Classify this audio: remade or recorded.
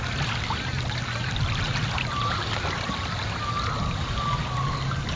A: recorded